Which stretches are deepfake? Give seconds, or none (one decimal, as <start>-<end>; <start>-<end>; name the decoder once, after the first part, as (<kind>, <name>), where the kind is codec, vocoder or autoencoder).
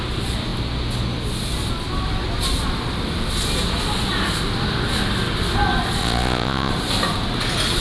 6.0-6.7 (vocoder, Vocos)